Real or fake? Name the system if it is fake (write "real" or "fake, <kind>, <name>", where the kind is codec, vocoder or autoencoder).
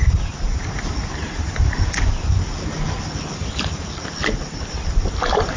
real